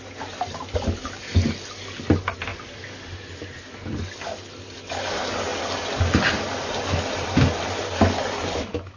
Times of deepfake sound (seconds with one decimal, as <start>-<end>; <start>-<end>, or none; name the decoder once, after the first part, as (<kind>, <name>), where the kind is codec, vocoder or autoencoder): none